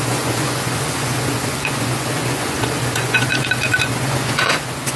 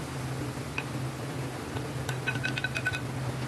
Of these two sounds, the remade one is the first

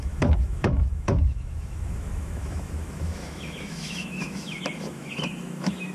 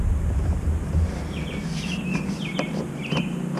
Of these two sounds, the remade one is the first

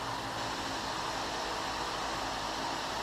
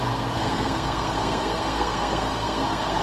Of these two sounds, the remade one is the second